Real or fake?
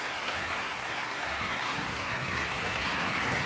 fake